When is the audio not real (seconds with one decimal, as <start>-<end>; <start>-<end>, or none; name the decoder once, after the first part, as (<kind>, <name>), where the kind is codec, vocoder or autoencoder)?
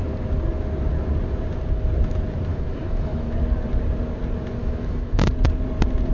2.5-3.3 (autoencoder, DAC-VAE); 4.6-5.3